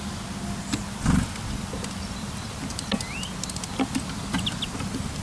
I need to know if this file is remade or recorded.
recorded